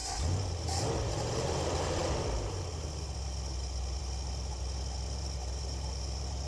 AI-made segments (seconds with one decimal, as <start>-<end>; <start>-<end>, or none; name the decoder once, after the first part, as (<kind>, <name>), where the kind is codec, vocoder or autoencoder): none